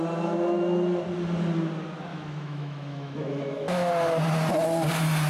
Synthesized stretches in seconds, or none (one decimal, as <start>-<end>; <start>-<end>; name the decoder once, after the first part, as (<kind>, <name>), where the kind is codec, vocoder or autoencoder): 2.1-3.9 (autoencoder, DAC-VAE)